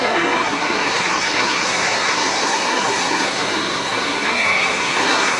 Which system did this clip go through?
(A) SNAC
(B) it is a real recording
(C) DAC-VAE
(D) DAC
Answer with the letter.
A